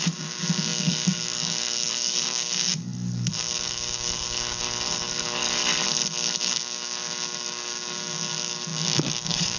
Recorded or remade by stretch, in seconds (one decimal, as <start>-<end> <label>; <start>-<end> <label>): 0.0-5.6 remade; 5.6-6.4 recorded; 6.4-9.6 remade